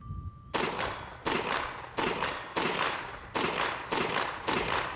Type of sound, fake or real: real